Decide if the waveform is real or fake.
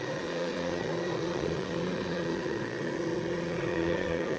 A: fake